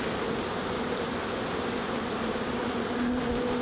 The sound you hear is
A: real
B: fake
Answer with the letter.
A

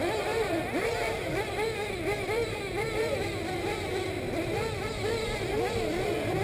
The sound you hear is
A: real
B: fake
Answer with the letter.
B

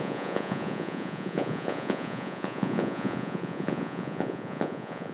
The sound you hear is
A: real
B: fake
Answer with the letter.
B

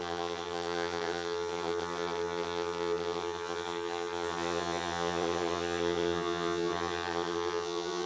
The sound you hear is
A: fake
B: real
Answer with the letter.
A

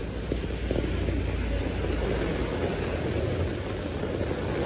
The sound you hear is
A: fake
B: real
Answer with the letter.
B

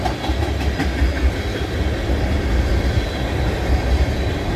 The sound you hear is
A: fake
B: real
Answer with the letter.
B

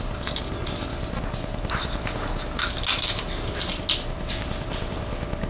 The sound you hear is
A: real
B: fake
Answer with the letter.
A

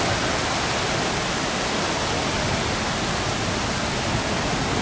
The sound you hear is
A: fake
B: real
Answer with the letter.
B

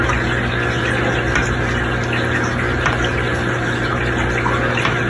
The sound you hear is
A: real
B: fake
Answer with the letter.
A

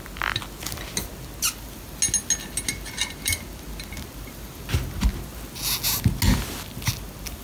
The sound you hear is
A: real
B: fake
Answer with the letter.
A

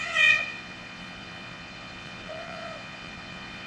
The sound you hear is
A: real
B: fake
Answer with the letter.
B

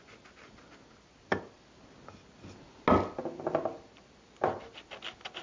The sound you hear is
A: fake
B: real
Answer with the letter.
B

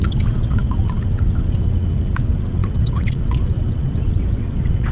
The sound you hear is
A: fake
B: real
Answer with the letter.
A